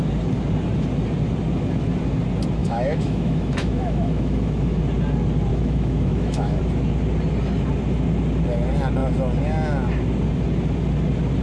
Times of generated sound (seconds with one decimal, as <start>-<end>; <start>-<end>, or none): 2.6-4.8; 5.5-6.6

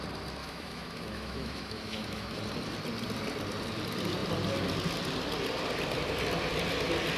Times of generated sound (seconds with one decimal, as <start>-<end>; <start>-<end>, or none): 0.4-2.4

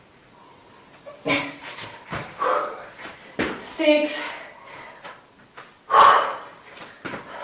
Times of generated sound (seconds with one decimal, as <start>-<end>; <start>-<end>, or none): none

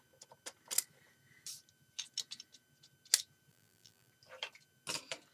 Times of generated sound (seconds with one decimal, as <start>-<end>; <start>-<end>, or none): 3.5-4.1